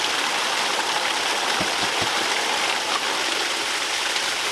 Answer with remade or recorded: recorded